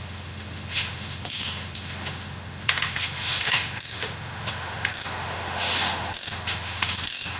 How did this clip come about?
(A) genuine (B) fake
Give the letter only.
B